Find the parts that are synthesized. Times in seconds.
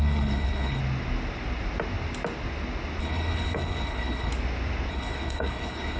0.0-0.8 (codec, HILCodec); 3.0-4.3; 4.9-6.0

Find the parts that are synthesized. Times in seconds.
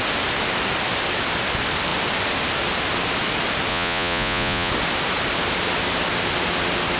3.7-4.7 (vocoder, Vocos)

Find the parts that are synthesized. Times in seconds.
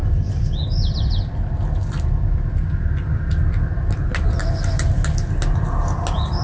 none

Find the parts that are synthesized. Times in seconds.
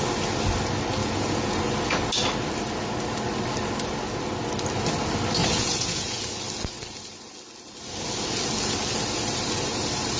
1.0-1.6 (vocoder, Vocos); 5.4-6.3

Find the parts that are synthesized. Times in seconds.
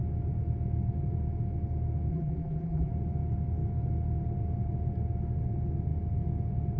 2.1-2.9 (vocoder, BigVGAN v2)